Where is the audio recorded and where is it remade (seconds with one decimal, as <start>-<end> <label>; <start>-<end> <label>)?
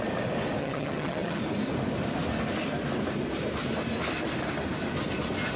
0.0-0.6 recorded; 0.6-1.4 remade; 1.4-5.6 recorded